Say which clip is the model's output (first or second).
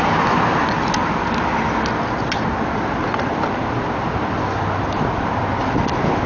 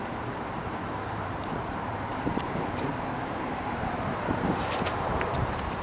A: second